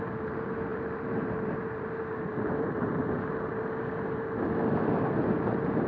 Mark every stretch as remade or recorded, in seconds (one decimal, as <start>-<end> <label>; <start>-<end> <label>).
0.0-0.7 recorded; 0.7-4.2 remade; 4.2-5.9 recorded